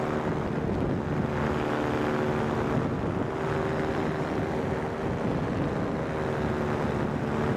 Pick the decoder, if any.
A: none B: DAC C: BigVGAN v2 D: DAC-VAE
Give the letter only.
A